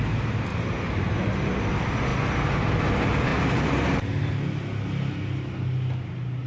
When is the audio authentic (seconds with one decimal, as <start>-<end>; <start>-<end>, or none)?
0.0-0.5; 1.1-2.1; 2.8-3.3; 4.3-6.5